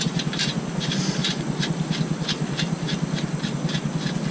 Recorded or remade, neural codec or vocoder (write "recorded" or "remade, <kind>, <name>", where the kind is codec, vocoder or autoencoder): recorded